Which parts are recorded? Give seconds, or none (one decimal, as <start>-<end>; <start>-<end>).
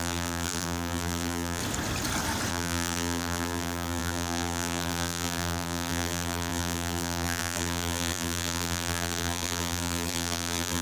1.6-2.5